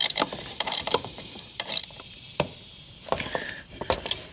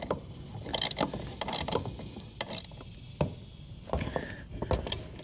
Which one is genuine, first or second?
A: second